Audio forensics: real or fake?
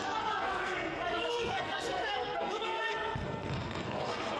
fake